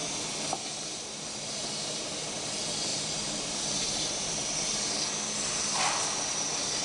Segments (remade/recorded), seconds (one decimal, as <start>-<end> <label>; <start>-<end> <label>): 0.0-2.0 remade; 2.0-2.9 recorded; 2.9-4.7 remade; 4.7-6.8 recorded

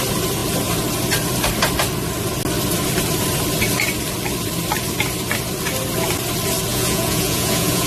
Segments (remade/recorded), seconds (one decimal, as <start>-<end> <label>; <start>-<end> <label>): 0.0-6.7 recorded; 6.7-7.9 remade

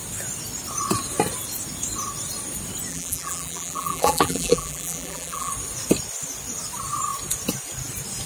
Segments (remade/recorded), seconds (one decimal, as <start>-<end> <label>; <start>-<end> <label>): 0.0-2.9 recorded; 2.9-5.5 remade; 5.5-8.3 recorded

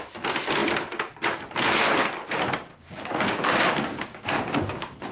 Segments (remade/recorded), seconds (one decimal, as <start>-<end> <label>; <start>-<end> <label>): 0.0-2.7 recorded; 2.7-5.1 remade